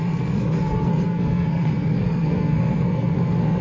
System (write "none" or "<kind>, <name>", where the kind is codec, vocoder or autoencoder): codec, SNAC